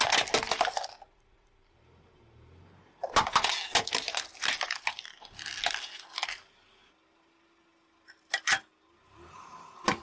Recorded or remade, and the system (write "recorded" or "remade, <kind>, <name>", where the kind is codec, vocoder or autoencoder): recorded